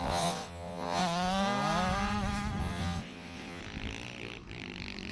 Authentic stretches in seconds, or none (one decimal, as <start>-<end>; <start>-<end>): 1.0-2.6; 3.6-5.1